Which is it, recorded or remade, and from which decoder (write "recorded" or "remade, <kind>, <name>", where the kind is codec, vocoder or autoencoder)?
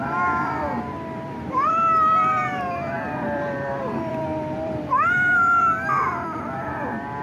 remade, vocoder, BigVGAN v2